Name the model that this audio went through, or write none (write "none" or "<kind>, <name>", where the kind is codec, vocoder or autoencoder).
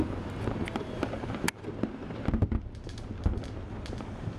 none